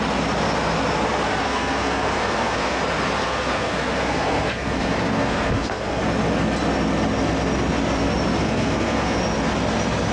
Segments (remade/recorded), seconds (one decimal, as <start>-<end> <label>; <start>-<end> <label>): 0.0-1.4 recorded; 1.4-2.8 remade; 2.8-3.2 recorded; 3.2-6.0 remade; 6.0-8.4 recorded; 8.4-9.2 remade; 9.2-10.1 recorded